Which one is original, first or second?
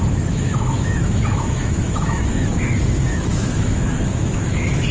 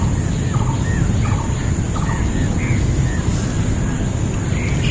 second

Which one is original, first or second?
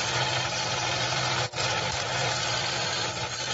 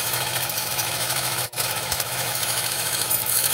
first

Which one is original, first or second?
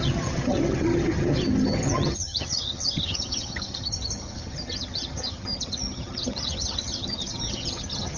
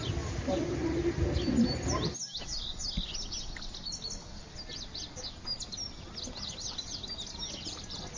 second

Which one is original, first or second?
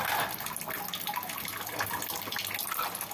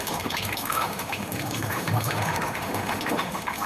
first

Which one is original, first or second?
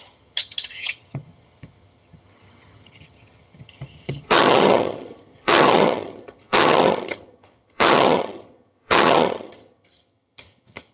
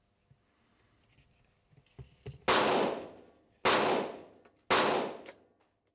second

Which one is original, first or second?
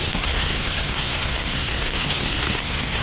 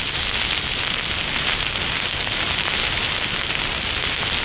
second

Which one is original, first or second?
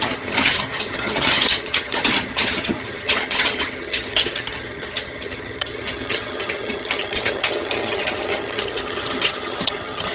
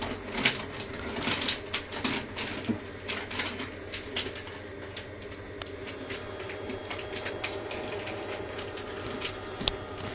second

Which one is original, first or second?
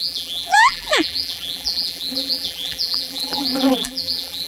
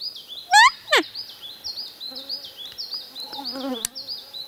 second